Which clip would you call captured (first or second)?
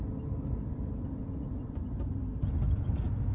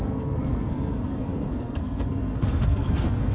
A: first